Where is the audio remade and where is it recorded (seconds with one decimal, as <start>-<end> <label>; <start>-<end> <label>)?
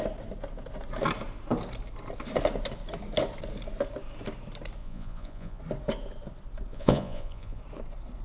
0.0-4.8 recorded; 4.8-5.6 remade; 5.6-6.7 recorded; 6.7-7.6 remade; 7.6-8.2 recorded